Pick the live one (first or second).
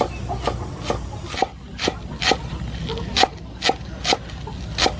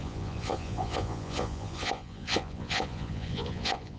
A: first